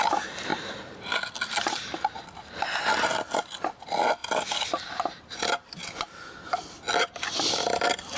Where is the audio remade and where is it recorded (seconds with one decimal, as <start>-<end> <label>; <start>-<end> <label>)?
0.0-8.2 recorded